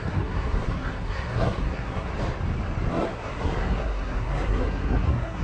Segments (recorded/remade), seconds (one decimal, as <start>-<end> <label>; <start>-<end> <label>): 0.0-2.1 remade; 2.1-2.9 recorded; 2.9-5.4 remade